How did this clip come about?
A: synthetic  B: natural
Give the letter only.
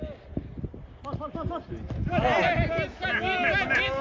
B